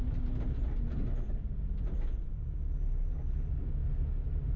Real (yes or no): yes